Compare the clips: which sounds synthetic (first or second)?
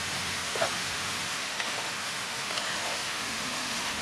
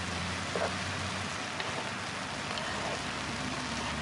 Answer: first